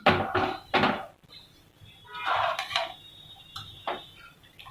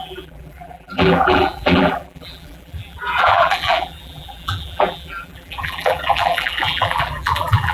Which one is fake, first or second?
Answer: second